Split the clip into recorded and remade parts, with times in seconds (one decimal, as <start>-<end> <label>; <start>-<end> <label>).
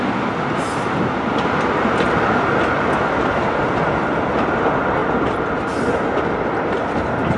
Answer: 0.0-7.4 recorded